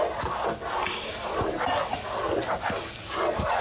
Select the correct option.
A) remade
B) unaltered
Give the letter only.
B